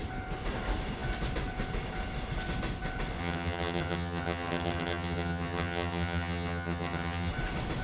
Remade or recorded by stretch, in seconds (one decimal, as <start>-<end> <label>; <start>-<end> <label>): 0.0-3.2 recorded; 3.2-7.3 remade; 7.3-7.8 recorded